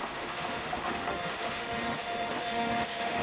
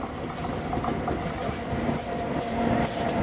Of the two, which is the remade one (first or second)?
first